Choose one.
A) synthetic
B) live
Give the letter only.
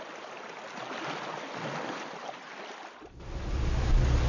B